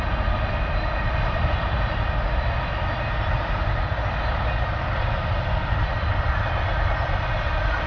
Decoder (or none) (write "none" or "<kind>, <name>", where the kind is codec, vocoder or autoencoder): none